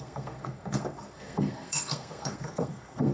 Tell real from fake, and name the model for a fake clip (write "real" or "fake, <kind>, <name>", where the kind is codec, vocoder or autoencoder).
fake, codec, SNAC